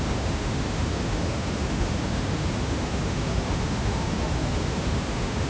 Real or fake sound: fake